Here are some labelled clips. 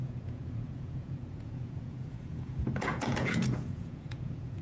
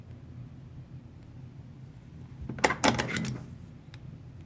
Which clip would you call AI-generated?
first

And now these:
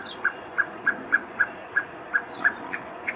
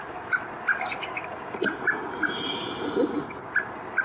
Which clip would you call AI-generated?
first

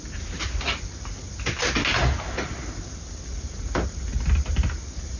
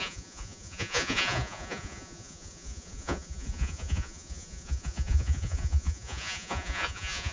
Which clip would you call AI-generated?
second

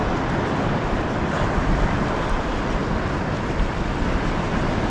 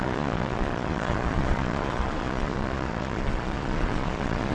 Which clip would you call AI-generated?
second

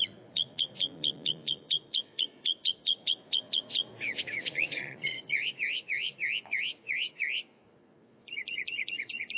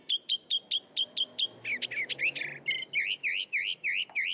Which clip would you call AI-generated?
first